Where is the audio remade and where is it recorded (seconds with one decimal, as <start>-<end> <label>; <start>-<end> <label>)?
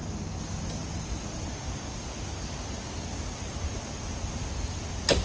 0.0-5.2 recorded